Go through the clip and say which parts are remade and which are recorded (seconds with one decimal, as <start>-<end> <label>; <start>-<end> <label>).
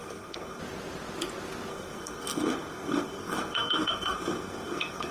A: 0.0-0.6 remade; 0.6-1.7 recorded; 1.7-5.1 remade